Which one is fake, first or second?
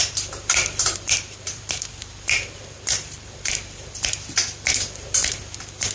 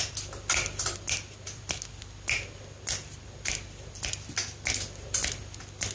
first